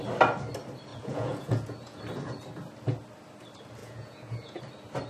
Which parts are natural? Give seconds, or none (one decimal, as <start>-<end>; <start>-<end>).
0.0-0.9; 2.0-3.8; 4.6-5.1